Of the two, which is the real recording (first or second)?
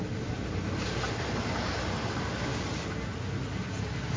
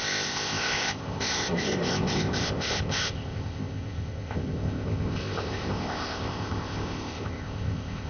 first